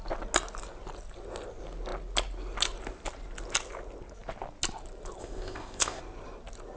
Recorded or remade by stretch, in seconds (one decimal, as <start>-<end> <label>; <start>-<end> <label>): 0.0-5.2 recorded; 5.2-6.0 remade; 6.0-6.8 recorded